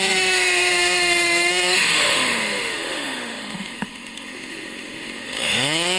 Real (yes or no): no